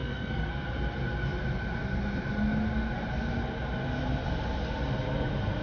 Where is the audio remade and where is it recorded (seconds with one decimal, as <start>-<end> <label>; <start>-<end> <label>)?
0.0-0.5 remade; 0.5-5.6 recorded